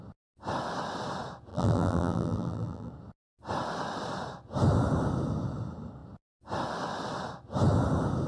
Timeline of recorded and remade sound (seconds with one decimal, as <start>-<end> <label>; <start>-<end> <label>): 0.0-1.5 recorded; 1.5-2.9 remade; 2.9-8.3 recorded